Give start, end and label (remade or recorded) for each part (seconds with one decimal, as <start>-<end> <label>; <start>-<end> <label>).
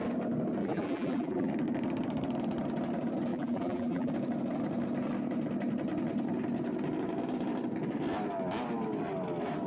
0.0-0.6 recorded; 0.6-1.5 remade; 1.5-3.3 recorded; 3.3-4.1 remade; 4.1-9.7 recorded